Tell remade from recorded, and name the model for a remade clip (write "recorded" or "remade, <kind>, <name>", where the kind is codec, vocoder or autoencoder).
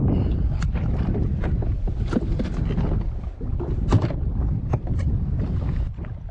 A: remade, vocoder, BigVGAN v2